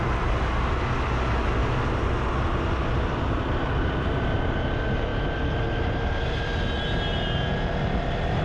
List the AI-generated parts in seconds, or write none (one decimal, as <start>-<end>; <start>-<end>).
7.1-7.7

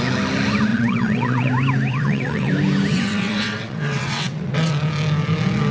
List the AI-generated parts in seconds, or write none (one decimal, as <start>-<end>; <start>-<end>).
0.7-1.5; 1.9-2.5; 2.9-4.7

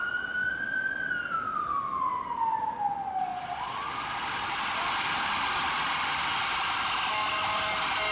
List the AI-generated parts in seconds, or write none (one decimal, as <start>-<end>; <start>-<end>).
none

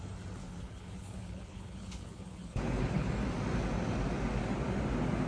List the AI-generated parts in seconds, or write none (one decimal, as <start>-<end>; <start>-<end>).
0.4-3.1

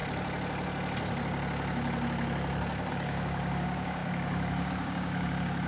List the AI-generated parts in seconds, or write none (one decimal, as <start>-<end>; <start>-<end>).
2.9-5.7

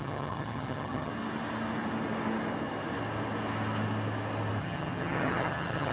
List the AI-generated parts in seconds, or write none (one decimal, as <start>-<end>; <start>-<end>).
0.0-1.1; 4.6-5.9

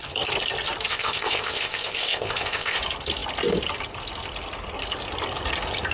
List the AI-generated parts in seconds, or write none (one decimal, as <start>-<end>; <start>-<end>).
0.9-2.8

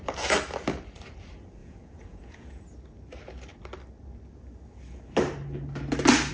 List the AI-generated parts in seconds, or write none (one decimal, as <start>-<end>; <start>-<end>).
1.6-2.6